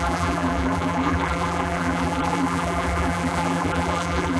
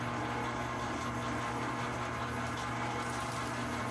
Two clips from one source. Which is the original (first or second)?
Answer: second